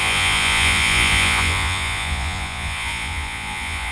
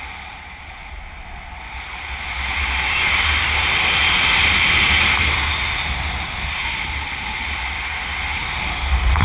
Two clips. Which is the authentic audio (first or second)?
second